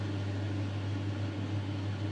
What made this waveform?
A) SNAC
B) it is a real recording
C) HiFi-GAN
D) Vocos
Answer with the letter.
B